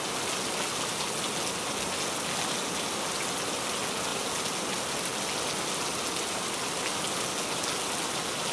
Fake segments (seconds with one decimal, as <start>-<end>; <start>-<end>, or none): none